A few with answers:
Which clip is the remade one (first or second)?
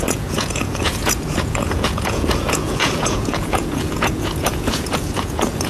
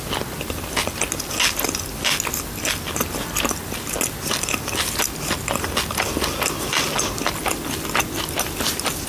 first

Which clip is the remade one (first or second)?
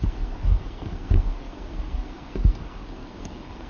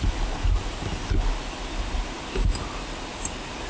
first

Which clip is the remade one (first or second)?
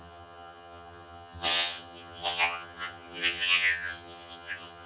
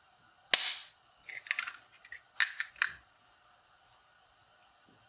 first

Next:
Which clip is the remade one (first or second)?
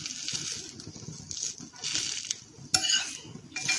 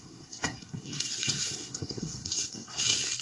second